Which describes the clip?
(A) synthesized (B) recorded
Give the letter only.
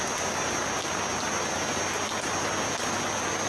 B